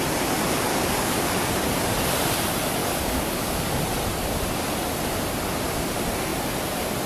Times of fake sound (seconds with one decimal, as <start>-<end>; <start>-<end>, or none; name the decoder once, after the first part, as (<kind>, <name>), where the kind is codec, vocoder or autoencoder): 0.7-1.7 (codec, DAC); 2.8-3.8